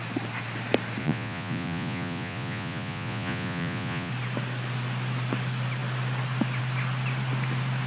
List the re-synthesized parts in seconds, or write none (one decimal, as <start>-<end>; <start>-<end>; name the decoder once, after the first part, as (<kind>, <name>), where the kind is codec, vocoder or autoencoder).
1.0-4.1 (vocoder, Vocos)